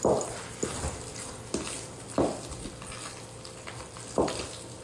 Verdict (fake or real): real